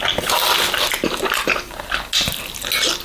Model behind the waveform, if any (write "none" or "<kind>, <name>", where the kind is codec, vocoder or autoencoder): none